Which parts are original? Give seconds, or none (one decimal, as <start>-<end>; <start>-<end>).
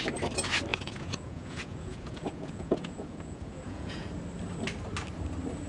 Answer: 0.0-0.7; 4.1-5.7